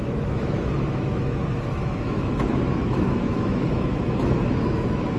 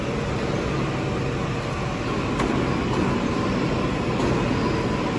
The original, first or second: second